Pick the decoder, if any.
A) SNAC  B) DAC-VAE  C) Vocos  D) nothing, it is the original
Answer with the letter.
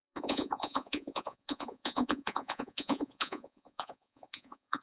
C